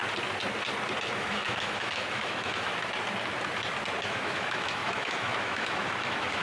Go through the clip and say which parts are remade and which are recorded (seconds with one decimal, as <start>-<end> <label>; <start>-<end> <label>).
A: 0.0-1.1 recorded; 1.1-2.7 remade; 2.7-4.0 recorded; 4.0-6.4 remade